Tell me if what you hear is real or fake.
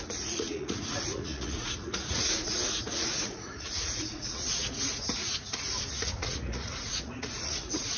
fake